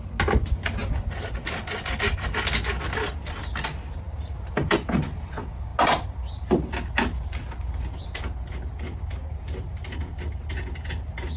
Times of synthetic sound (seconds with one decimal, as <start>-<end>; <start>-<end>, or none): none